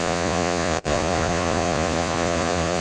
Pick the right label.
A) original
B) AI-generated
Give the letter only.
B